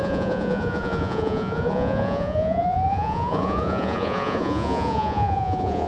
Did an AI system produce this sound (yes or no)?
yes